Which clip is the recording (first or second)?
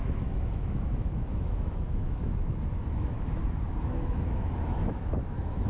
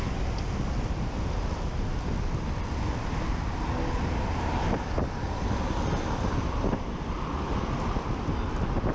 second